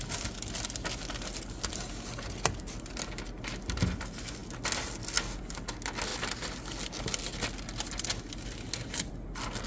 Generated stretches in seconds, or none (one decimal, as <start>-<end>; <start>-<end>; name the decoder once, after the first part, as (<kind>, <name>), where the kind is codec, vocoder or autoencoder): none